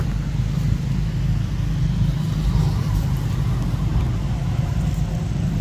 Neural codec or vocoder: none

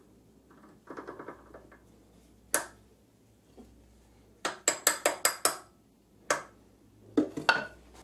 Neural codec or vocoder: none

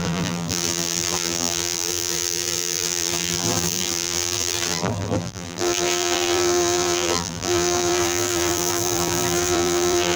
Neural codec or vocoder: vocoder, BigVGAN v2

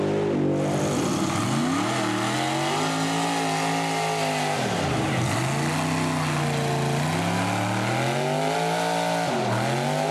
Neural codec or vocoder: none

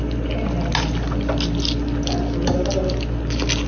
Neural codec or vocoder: none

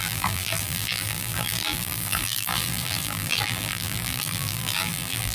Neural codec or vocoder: vocoder, BigVGAN v2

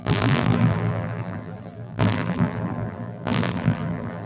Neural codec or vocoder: vocoder, BigVGAN v2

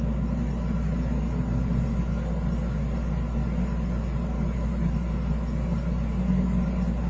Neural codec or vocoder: none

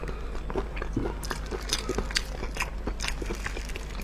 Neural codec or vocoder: none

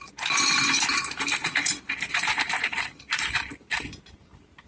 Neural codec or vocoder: vocoder, BigVGAN v2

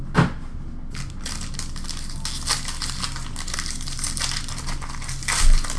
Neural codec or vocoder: none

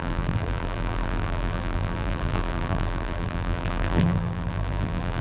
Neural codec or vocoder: vocoder, BigVGAN v2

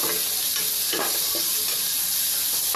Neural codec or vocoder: none